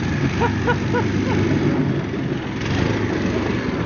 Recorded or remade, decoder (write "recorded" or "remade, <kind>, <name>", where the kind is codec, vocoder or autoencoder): recorded